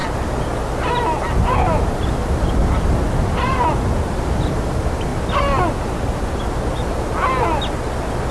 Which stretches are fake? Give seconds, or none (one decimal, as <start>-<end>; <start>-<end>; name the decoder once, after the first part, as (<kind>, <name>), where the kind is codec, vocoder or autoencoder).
none